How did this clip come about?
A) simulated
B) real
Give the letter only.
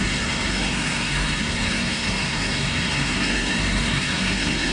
A